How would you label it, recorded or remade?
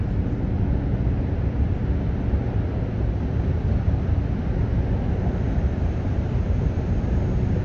recorded